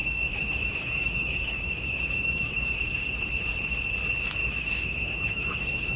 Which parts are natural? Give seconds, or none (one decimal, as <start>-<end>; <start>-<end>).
2.9-4.4